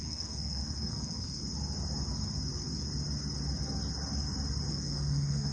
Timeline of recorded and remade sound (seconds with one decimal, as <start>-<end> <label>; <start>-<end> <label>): 0.0-1.4 remade; 1.4-4.7 recorded; 4.7-5.5 remade